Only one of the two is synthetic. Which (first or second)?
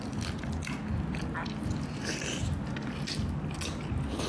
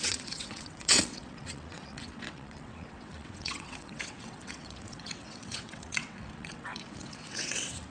second